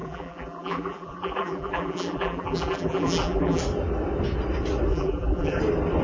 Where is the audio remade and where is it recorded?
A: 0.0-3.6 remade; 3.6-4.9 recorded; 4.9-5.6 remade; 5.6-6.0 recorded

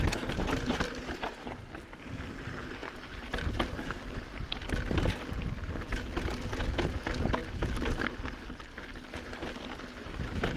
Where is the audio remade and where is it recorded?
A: 0.0-2.8 recorded; 2.8-3.5 remade; 3.5-7.4 recorded; 7.4-8.1 remade; 8.1-10.6 recorded

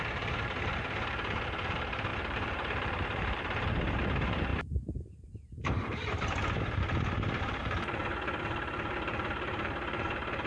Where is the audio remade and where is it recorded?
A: 0.0-10.5 remade

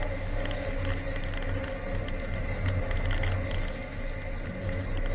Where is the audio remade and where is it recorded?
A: 0.0-5.1 recorded

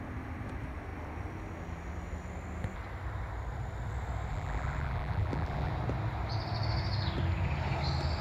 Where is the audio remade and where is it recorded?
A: 0.0-4.3 recorded; 4.3-5.7 remade; 5.7-8.2 recorded

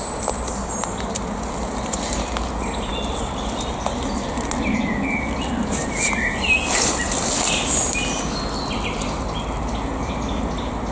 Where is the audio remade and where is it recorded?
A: 0.0-10.9 recorded